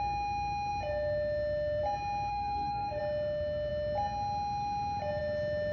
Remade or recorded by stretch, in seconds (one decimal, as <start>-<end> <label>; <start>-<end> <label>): 0.0-2.3 recorded; 2.3-3.0 remade; 3.0-5.7 recorded